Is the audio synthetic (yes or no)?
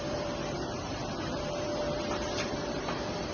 yes